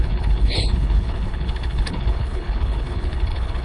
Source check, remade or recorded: remade